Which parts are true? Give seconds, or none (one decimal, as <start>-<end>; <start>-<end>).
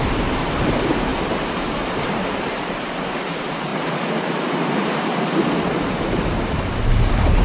3.7-4.2